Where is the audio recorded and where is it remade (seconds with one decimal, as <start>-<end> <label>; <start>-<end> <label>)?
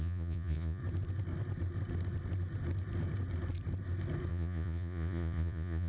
0.0-0.8 remade; 0.8-4.3 recorded; 4.3-5.9 remade